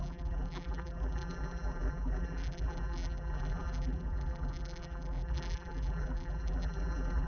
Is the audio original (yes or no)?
no